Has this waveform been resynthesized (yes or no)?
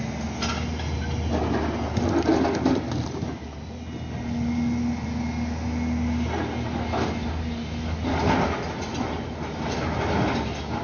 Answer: no